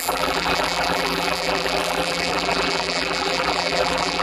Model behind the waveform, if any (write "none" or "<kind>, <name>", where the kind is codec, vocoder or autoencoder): vocoder, BigVGAN v2